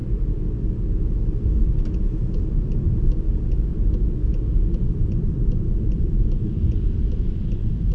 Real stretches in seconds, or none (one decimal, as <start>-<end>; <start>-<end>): 0.0-2.6; 3.7-4.8